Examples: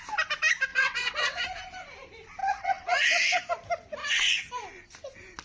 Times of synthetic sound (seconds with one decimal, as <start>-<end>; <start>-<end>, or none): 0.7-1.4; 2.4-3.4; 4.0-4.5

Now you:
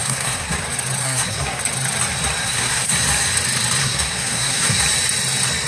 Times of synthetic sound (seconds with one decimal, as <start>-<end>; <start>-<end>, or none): 0.0-0.6; 1.0-1.6; 2.4-2.9; 3.8-4.8

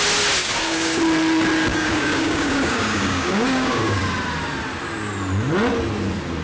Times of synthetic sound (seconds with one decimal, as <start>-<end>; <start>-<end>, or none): 0.4-1.0; 1.7-4.0

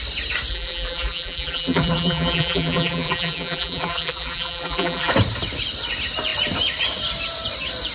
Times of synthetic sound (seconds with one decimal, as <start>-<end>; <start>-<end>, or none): 0.5-5.1

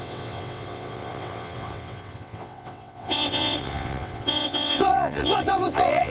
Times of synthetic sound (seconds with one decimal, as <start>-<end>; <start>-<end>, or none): 0.0-6.1